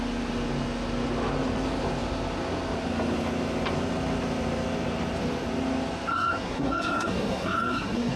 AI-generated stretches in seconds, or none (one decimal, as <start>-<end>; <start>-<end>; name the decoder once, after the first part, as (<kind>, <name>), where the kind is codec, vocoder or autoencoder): 6.1-8.2 (codec, SNAC)